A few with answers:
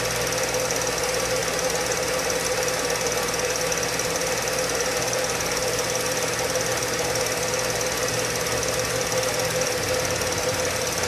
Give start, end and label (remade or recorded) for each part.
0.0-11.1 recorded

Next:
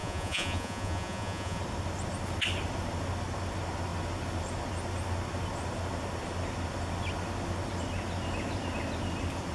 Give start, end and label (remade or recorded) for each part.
0.0-1.6 remade; 1.6-9.5 recorded